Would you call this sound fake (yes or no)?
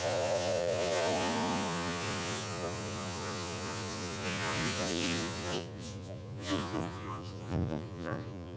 yes